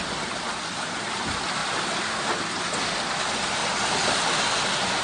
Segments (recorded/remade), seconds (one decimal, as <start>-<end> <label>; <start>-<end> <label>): 0.0-5.0 recorded